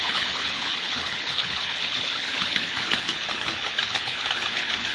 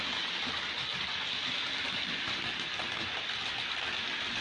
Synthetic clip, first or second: first